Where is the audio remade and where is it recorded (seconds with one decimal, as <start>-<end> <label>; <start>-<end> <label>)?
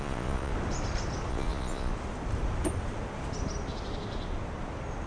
0.0-0.5 remade; 0.5-1.3 recorded; 1.3-1.9 remade; 1.9-5.1 recorded